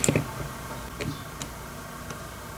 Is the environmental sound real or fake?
real